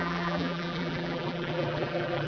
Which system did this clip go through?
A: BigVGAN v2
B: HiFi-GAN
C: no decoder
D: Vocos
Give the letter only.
A